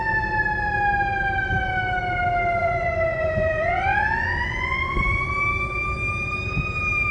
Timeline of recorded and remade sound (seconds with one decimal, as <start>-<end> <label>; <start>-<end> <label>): 0.0-2.6 recorded; 2.6-5.3 remade; 5.3-7.1 recorded